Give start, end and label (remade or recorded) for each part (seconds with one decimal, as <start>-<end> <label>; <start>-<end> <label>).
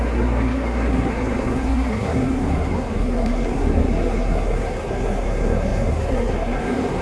0.0-7.0 remade